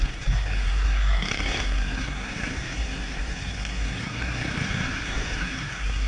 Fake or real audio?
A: fake